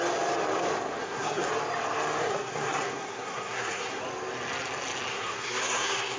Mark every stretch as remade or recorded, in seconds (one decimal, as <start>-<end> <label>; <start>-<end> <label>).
0.0-1.0 recorded; 1.0-1.5 remade; 1.5-2.2 recorded; 2.2-4.0 remade; 4.0-5.1 recorded; 5.1-6.2 remade